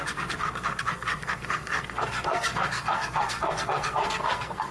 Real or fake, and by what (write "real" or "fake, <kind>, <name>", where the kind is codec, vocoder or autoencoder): fake, codec, SNAC